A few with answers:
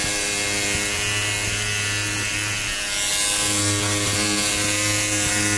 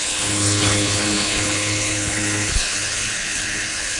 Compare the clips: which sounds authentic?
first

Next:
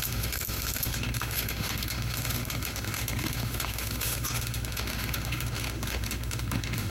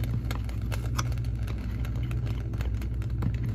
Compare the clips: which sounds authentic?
second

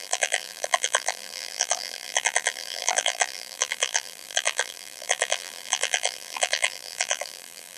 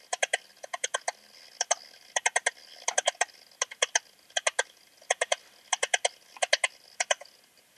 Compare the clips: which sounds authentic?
second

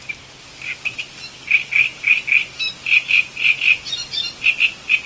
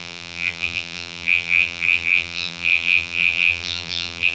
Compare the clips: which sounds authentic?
first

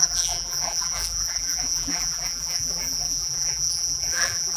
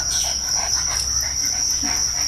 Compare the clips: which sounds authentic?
second